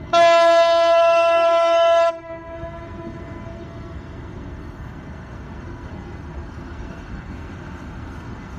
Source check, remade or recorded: remade